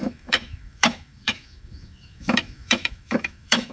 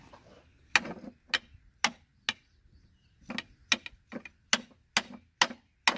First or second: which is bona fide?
second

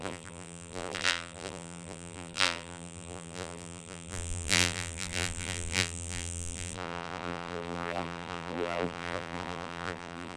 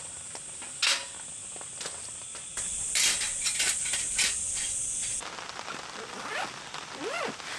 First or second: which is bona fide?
second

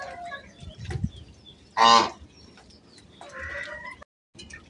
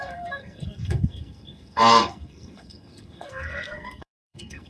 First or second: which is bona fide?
first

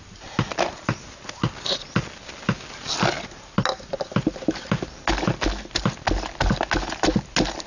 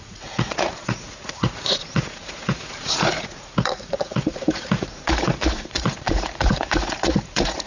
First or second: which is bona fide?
first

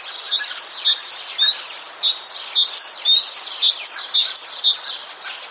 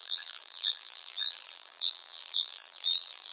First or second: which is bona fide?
first